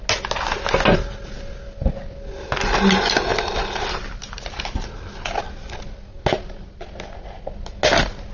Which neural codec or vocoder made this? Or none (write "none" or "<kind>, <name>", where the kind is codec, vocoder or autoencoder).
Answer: none